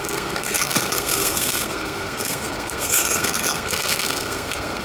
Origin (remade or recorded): remade